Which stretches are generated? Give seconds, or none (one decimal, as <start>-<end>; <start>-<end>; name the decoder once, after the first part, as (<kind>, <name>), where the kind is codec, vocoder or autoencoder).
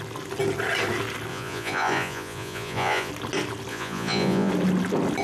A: 1.3-3.1 (vocoder, Vocos); 3.7-4.5